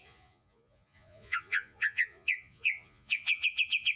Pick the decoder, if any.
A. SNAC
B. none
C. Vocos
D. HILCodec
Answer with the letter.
C